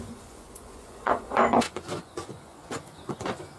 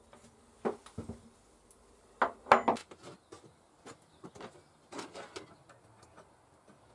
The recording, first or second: second